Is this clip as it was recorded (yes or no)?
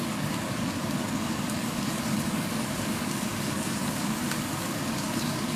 no